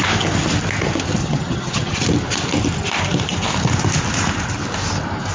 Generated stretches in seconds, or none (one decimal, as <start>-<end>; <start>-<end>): 1.2-2.0